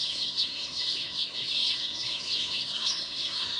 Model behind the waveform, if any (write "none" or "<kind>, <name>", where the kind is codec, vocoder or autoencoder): codec, SNAC